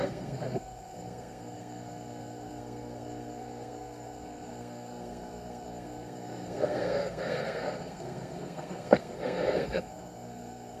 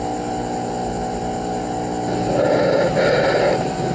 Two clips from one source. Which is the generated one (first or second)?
first